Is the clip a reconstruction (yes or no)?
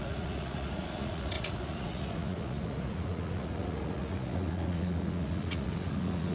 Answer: yes